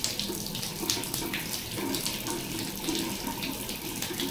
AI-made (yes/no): no